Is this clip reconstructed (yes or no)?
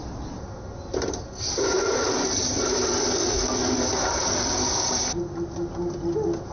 no